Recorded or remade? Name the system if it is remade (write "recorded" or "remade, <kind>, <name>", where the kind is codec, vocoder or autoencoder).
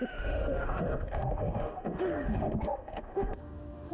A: remade, autoencoder, DAC-VAE